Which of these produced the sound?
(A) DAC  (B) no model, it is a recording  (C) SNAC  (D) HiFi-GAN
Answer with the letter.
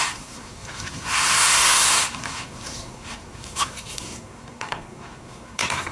C